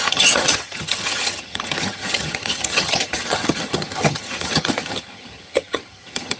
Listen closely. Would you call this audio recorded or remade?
remade